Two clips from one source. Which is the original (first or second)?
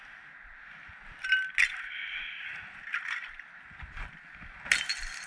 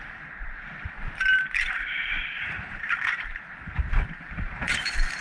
first